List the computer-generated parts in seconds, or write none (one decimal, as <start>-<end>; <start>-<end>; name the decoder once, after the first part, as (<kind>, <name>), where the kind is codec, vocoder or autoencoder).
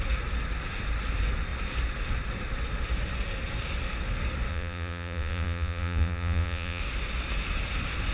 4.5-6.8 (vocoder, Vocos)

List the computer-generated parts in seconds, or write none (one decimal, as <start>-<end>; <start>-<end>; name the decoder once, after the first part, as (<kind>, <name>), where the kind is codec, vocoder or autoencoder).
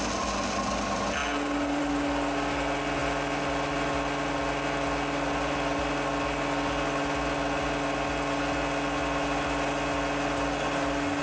none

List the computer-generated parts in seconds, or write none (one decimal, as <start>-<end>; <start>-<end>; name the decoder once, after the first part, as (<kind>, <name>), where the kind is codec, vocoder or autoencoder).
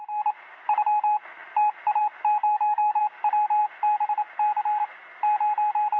2.4-3.0 (codec, DAC)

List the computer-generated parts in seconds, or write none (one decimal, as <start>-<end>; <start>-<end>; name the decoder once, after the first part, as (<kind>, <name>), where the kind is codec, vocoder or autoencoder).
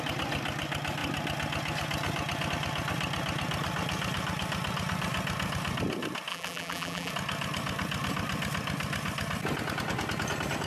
6.3-7.1 (vocoder, BigVGAN v2)